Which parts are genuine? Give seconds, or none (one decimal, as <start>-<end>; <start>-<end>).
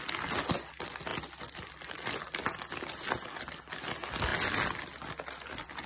0.0-5.9